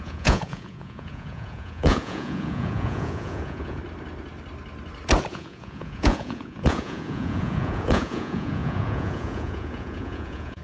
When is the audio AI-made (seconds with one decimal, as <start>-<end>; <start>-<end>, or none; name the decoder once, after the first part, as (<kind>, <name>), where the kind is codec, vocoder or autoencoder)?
0.0-3.8 (vocoder, Vocos); 5.3-10.6